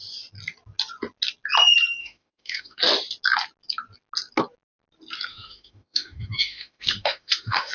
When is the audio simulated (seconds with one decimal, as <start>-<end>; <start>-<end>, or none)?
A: 2.0-2.8; 5.3-7.7